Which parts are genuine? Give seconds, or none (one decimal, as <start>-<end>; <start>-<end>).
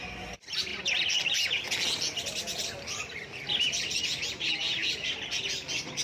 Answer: 0.0-6.0